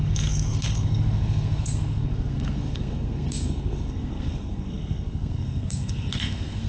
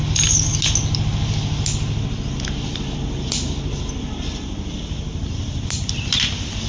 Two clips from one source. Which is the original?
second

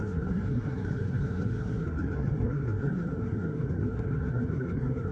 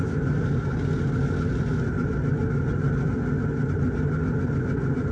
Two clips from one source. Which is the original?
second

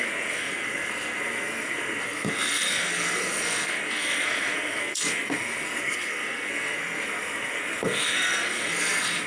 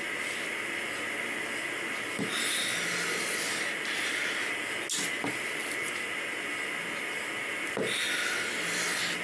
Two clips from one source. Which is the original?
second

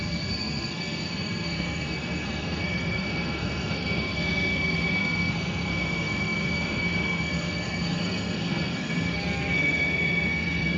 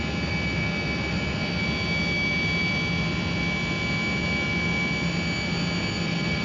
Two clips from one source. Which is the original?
second